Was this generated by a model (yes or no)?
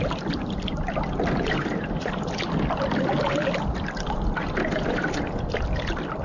no